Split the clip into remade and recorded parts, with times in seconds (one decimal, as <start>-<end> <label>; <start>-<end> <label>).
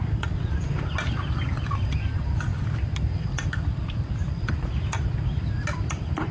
0.0-2.5 recorded; 2.5-6.3 remade